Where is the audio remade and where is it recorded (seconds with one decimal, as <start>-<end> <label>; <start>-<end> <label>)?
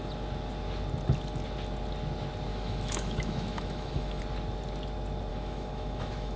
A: 0.0-2.5 recorded; 2.5-4.2 remade; 4.2-5.3 recorded; 5.3-6.4 remade